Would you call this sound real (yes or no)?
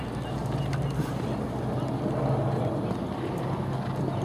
yes